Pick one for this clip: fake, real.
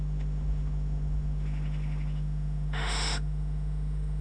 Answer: fake